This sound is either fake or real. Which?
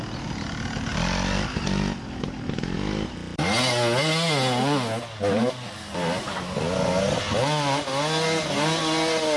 real